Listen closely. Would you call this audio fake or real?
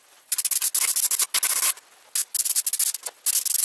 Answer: real